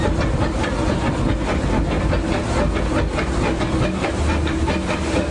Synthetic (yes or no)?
no